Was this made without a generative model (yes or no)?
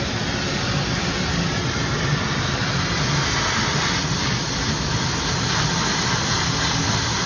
yes